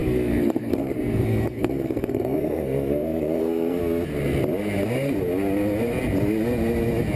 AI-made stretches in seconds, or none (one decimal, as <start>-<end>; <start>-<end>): 0.0-3.8